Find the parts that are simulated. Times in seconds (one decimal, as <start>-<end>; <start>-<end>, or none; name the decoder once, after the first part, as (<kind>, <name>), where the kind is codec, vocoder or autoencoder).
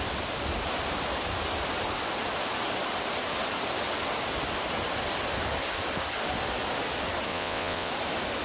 7.3-7.9 (vocoder, WaveNeXt)